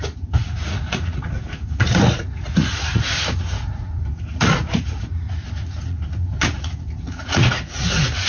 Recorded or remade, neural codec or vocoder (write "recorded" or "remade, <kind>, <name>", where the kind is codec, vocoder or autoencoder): remade, vocoder, Vocos